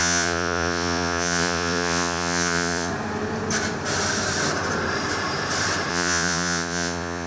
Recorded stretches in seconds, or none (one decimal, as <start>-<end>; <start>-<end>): 2.9-5.9